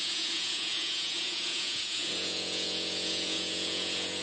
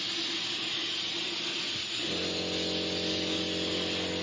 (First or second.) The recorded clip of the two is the second